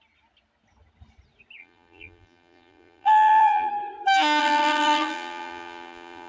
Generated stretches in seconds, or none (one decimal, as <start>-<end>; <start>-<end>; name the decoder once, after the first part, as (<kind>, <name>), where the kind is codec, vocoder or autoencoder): 1.6-3.7 (vocoder, BigVGAN v2); 4.4-6.3